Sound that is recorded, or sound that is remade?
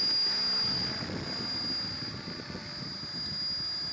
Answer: recorded